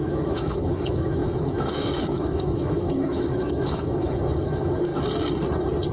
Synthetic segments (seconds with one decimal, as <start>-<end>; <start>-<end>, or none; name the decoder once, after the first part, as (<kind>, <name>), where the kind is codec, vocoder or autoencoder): 0.0-4.9 (autoencoder, DAC-VAE)

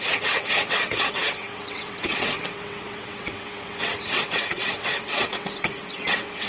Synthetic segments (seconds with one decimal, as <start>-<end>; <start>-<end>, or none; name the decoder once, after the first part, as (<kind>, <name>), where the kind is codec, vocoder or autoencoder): 0.0-6.5 (vocoder, WaveNeXt)

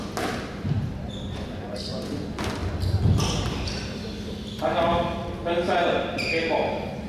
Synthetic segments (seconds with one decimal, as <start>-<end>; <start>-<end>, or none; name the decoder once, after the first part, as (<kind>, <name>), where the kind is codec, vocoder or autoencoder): none

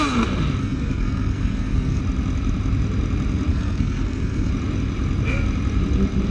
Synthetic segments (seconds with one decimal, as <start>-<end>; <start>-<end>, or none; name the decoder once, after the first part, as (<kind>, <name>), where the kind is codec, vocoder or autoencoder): 0.6-2.0 (codec, SNAC); 3.5-4.5

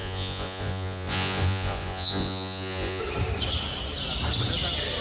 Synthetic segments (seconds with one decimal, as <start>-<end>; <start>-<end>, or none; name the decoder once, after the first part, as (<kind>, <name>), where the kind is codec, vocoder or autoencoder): 0.0-3.0 (vocoder, Vocos)